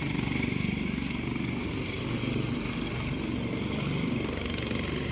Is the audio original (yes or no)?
yes